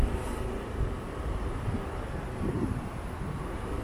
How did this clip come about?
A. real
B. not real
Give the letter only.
A